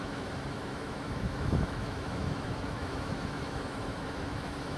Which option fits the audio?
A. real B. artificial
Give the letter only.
B